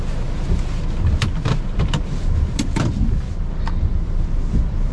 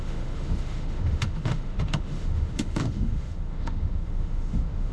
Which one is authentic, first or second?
first